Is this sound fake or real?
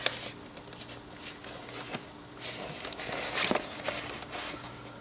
real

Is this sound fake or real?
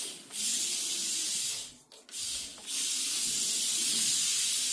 real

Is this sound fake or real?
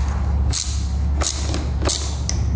real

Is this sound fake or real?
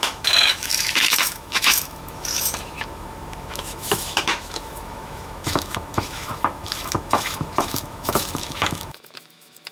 fake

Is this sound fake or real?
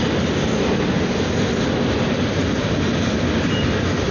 real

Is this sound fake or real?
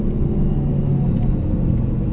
real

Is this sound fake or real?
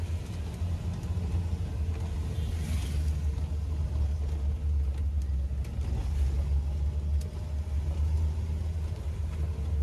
real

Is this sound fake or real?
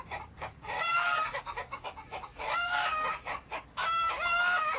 fake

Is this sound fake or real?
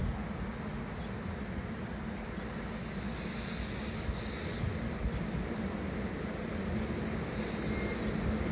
real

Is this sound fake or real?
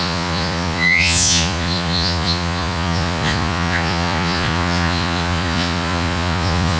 fake